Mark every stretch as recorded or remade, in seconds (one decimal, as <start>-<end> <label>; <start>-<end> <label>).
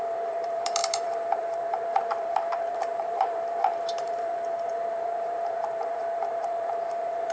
0.0-7.3 remade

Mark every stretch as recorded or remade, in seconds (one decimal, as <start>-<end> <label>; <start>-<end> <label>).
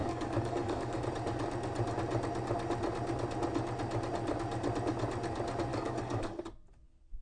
0.0-1.0 remade; 1.0-5.7 recorded; 5.7-6.4 remade; 6.4-7.2 recorded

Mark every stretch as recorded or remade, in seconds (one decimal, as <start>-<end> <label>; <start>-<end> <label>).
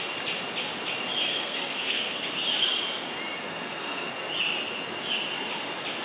0.0-1.3 recorded; 1.3-2.3 remade; 2.3-3.4 recorded; 3.4-4.1 remade; 4.1-6.0 recorded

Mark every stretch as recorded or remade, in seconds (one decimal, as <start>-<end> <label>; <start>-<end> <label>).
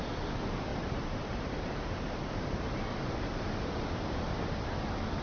0.0-0.7 recorded; 0.7-3.8 remade; 3.8-5.2 recorded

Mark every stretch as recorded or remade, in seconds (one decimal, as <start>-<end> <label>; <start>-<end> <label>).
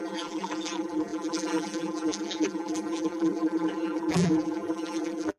0.0-5.4 remade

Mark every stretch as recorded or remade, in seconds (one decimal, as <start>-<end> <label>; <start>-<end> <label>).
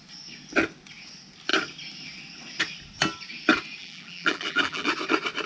0.0-3.8 recorded; 3.8-4.9 remade; 4.9-5.5 recorded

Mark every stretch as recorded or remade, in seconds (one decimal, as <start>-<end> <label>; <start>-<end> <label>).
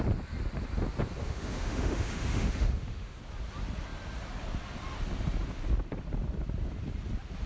0.0-1.2 recorded; 1.2-3.2 remade; 3.2-7.5 recorded